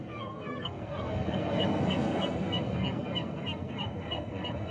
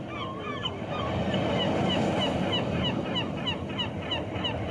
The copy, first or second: first